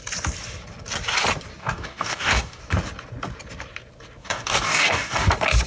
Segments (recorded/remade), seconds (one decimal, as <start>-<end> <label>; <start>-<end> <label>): 0.0-1.6 recorded; 1.6-2.6 remade; 2.6-4.2 recorded; 4.2-5.3 remade; 5.3-5.7 recorded